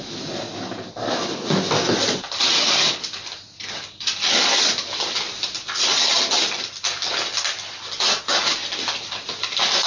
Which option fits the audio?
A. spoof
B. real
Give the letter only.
B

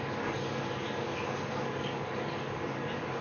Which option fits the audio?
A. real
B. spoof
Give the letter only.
B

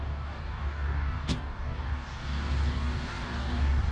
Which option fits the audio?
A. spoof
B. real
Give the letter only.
A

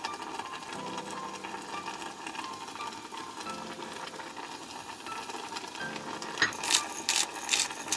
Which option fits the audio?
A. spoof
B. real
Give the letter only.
B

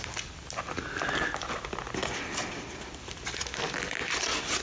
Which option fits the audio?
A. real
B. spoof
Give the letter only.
A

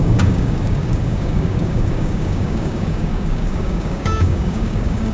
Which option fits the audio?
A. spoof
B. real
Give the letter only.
A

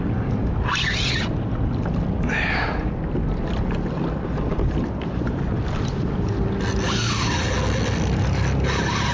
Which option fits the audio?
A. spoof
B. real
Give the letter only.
B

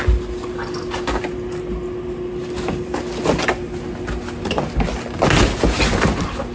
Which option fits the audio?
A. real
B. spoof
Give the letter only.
A